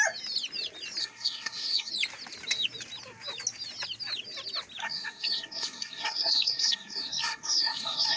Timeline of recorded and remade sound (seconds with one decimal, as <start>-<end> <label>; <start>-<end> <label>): 0.0-1.0 recorded; 1.0-1.9 remade; 1.9-4.8 recorded; 4.8-8.2 remade